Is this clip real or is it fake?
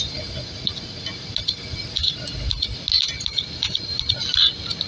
real